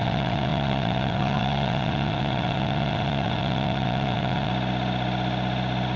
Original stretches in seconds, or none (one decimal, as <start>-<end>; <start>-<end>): 4.5-6.0